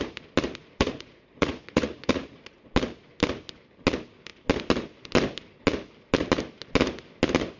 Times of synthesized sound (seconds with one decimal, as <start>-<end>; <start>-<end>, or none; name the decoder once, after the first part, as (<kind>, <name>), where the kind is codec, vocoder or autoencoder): 0.6-2.7 (vocoder, Vocos)

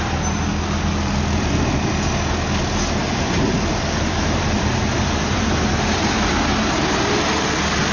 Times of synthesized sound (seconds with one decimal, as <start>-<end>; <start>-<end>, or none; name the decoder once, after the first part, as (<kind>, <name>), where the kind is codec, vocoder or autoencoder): 3.0-6.3 (vocoder, BigVGAN v2)

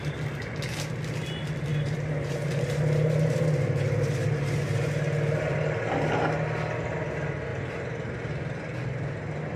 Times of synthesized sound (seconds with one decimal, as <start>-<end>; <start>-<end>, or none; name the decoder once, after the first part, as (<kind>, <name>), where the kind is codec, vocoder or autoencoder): 1.7-4.9 (vocoder, BigVGAN v2); 7.5-8.3

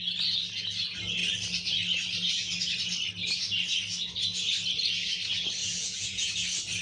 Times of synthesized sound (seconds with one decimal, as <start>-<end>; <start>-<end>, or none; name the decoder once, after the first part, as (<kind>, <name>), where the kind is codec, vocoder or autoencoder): 5.6-6.3 (vocoder, Vocos)

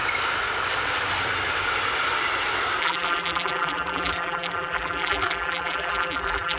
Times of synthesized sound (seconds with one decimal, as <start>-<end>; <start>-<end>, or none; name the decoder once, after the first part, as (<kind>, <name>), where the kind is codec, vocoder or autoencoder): 2.8-6.6 (vocoder, BigVGAN v2)

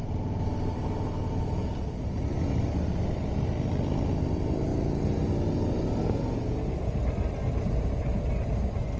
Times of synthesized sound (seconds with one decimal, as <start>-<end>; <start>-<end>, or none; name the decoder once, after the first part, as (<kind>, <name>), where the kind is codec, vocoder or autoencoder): none

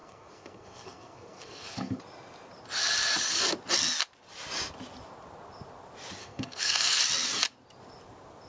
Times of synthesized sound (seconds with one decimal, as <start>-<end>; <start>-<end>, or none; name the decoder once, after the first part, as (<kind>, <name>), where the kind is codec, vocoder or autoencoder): 0.0-2.0 (codec, SNAC); 6.2-7.0

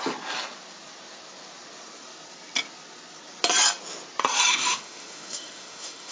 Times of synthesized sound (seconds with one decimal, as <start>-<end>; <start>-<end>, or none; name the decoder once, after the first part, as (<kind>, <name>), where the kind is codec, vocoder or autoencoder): 4.5-6.1 (autoencoder, DAC-VAE)